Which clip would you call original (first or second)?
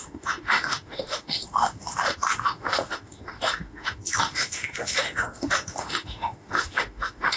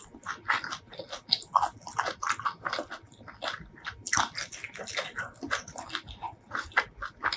second